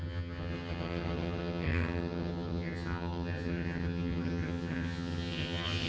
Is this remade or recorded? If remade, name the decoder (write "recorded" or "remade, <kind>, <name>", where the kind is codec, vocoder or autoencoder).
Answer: remade, vocoder, HiFi-GAN